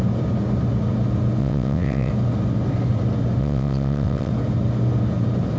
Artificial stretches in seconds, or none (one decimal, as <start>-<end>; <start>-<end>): 1.4-2.1; 3.4-4.3